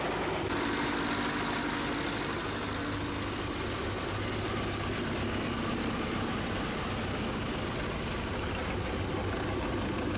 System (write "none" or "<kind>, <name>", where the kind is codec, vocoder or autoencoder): none